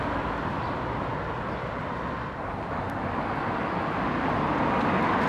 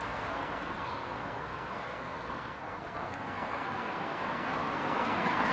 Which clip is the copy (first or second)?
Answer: second